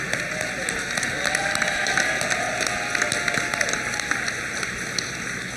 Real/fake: real